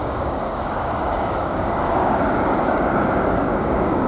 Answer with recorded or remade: remade